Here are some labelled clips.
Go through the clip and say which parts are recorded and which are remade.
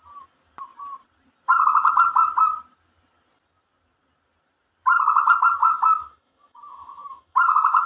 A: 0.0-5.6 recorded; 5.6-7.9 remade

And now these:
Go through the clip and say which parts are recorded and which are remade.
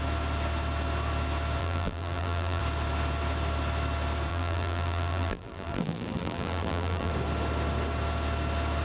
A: 0.0-1.6 recorded; 1.6-2.6 remade; 2.6-4.3 recorded; 4.3-7.1 remade; 7.1-8.8 recorded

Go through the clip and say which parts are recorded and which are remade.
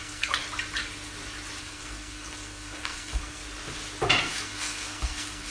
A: 0.0-0.4 remade; 0.4-1.6 recorded; 1.6-3.4 remade; 3.4-4.2 recorded; 4.2-5.5 remade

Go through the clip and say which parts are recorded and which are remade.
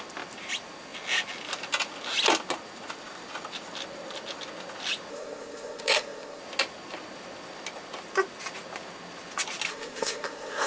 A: 0.0-5.1 recorded; 5.1-6.4 remade; 6.4-9.7 recorded; 9.7-10.7 remade